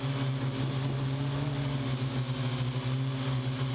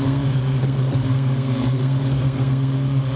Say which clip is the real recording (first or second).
first